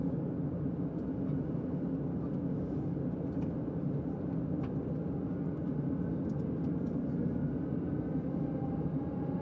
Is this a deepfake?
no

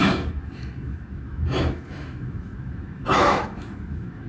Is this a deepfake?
yes